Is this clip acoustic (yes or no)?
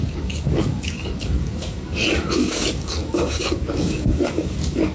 no